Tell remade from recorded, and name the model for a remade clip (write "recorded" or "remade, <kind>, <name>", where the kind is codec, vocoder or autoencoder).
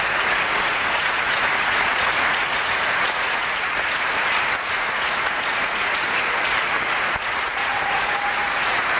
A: remade, vocoder, Vocos